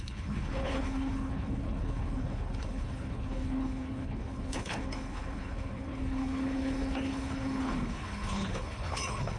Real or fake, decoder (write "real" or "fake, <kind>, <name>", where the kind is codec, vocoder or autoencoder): fake, codec, HILCodec